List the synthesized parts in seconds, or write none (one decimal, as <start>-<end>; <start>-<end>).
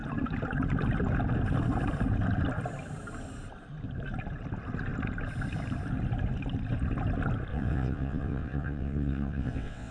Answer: 7.5-9.9